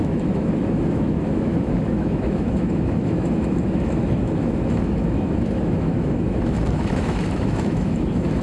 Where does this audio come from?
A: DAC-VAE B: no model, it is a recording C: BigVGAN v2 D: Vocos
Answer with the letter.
A